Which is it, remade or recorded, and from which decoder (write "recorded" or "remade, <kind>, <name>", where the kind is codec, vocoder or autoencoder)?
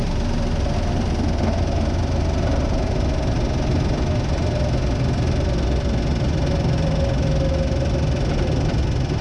recorded